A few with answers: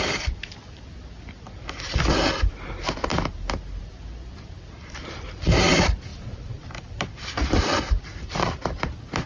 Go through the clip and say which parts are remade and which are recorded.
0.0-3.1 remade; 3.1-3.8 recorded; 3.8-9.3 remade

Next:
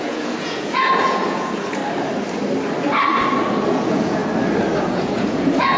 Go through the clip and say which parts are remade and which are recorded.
0.0-1.8 remade; 1.8-3.6 recorded; 3.6-4.2 remade; 4.2-4.8 recorded; 4.8-5.8 remade

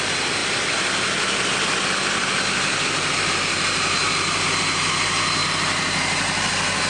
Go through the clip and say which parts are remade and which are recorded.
0.0-5.4 recorded; 5.4-6.5 remade; 6.5-6.9 recorded

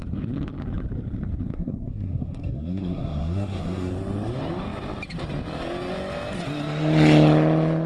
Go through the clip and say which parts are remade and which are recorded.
0.0-1.5 recorded; 1.5-3.9 remade; 3.9-7.9 recorded

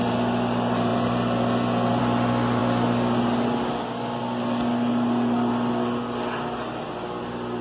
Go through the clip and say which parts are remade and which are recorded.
0.0-7.6 recorded

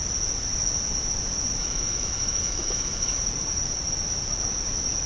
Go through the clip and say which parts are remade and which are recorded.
0.0-1.6 recorded; 1.6-3.2 remade; 3.2-5.1 recorded